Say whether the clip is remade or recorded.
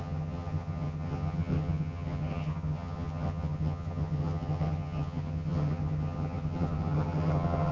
remade